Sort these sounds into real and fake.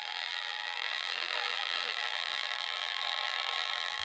fake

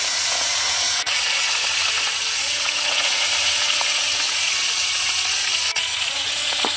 fake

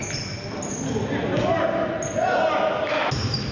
real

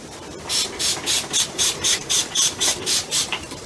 fake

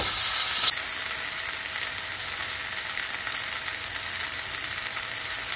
real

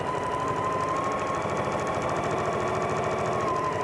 real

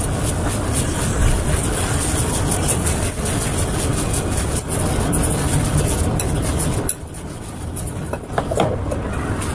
real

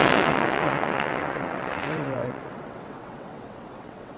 fake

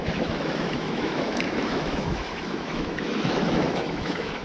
fake